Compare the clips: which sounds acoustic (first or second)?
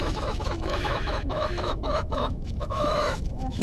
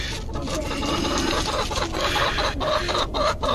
second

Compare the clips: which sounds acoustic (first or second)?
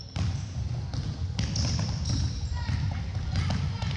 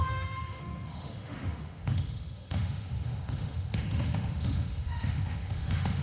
first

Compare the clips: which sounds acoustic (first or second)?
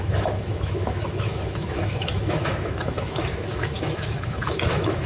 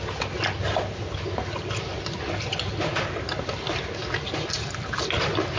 second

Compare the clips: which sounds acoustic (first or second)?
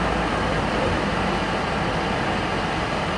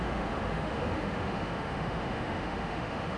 first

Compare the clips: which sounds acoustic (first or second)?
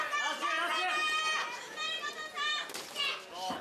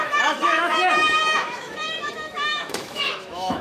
first